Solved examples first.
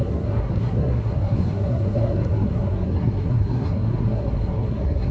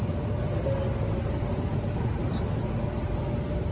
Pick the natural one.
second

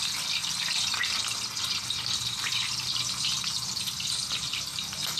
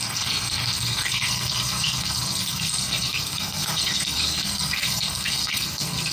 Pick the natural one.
first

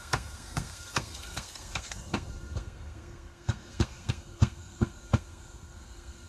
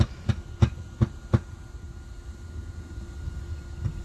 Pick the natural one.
second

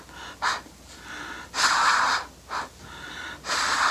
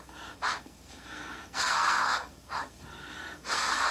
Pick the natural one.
first